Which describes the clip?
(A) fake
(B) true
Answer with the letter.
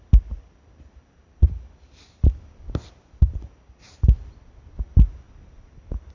B